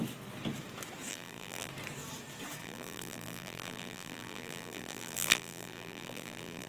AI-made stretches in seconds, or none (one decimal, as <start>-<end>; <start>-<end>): 1.1-1.7; 2.6-6.7